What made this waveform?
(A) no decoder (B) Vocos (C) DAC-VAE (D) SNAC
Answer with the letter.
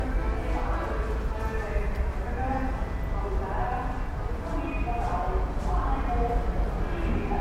A